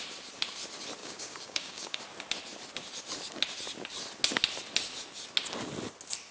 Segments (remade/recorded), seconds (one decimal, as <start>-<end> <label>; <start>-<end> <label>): 0.0-1.0 recorded; 1.0-2.0 remade; 2.0-6.3 recorded